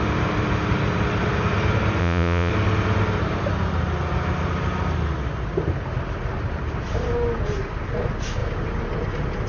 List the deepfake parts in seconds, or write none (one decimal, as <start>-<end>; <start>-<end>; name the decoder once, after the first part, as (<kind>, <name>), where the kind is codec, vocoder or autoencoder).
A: 2.0-2.5 (vocoder, Vocos)